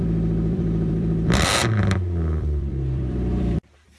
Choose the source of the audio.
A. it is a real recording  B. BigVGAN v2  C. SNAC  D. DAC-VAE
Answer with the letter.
B